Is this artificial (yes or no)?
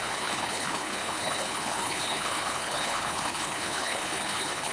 yes